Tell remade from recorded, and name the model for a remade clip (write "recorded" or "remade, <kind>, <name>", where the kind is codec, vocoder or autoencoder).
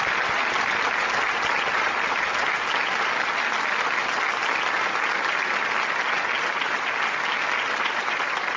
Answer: recorded